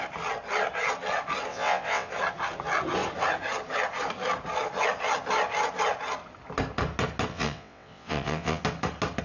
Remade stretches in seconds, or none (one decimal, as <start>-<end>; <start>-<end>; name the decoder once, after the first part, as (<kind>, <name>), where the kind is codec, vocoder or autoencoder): 1.5-2.1 (vocoder, WaveNeXt); 7.3-8.6